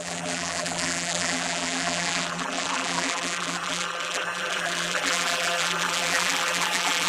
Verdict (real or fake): fake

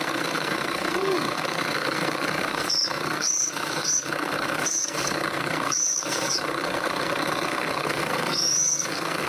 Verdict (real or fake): fake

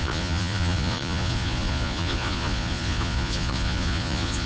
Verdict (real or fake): fake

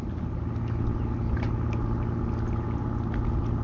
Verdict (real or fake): real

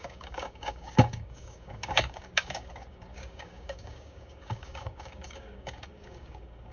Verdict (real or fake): fake